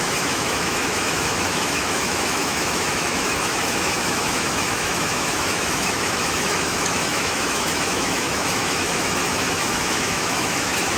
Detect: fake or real fake